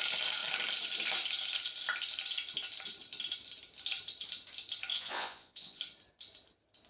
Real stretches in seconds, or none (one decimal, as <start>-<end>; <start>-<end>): 0.0-4.9; 5.8-6.9